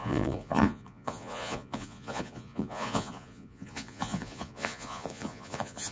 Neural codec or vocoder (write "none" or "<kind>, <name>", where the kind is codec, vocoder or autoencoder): vocoder, Vocos